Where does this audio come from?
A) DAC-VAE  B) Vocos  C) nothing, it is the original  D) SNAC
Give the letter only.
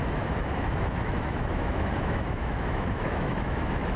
A